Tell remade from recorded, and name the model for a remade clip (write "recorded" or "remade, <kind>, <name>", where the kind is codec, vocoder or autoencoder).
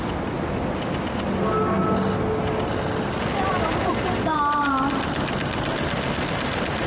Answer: recorded